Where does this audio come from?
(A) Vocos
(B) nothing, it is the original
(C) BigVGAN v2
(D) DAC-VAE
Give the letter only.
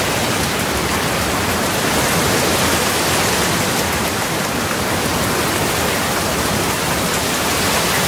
B